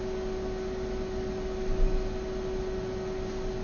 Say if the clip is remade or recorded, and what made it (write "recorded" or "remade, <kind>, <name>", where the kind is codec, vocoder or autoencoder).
recorded